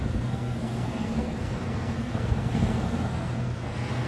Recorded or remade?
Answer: remade